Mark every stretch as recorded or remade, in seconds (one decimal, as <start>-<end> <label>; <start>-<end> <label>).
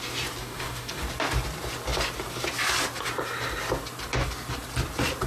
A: 0.0-0.4 recorded; 0.4-1.0 remade; 1.0-5.3 recorded